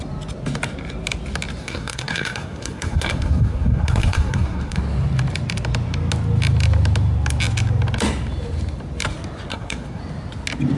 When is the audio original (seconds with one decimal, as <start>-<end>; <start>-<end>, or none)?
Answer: 0.0-1.6; 4.8-9.5; 10.0-10.8